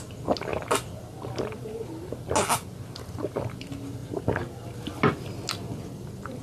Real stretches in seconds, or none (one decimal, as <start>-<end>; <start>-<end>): 0.0-6.4